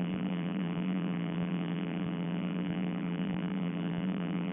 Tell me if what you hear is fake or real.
fake